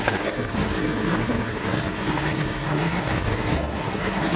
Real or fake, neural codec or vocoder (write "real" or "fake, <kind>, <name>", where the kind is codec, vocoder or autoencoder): fake, codec, SNAC